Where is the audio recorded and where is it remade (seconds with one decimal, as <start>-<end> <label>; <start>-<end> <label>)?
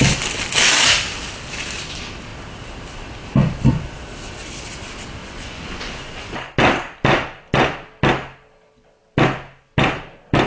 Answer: 0.0-5.2 recorded; 5.2-6.5 remade; 6.5-10.5 recorded